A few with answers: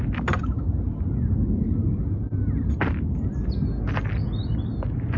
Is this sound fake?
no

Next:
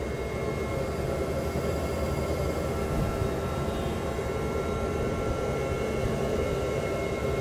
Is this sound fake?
no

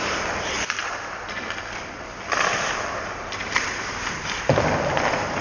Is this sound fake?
yes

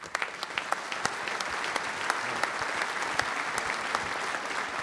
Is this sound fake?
no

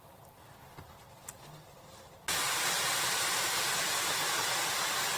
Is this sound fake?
no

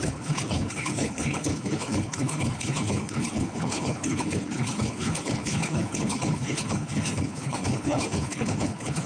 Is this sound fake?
yes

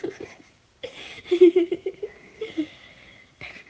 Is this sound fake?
yes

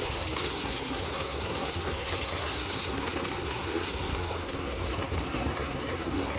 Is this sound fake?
yes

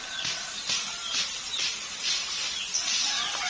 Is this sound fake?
yes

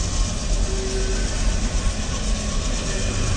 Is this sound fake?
no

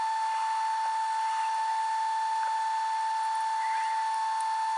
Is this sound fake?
no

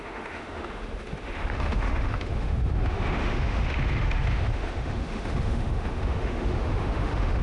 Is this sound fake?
yes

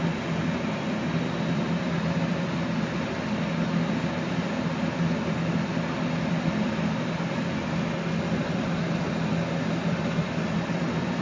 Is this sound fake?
no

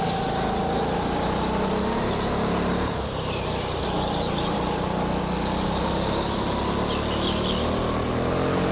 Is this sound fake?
no